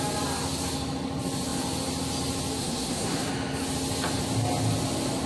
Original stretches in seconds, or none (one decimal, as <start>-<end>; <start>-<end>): 0.0-2.6; 3.3-5.3